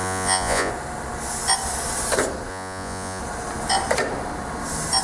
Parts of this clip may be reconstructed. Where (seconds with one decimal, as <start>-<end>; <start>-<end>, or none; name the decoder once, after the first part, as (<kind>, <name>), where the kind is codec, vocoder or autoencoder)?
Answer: 0.0-0.7 (vocoder, Vocos); 2.5-3.2